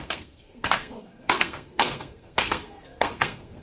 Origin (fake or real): fake